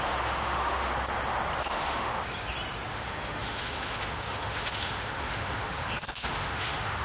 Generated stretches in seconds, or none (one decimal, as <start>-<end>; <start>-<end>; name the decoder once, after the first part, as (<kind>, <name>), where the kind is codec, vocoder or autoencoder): 0.0-0.9 (autoencoder, DAC-VAE); 1.6-2.1; 2.9-7.0